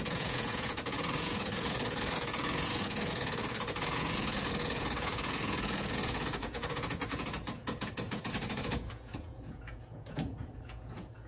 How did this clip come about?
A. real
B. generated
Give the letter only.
B